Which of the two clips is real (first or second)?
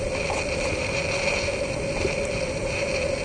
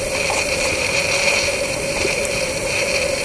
first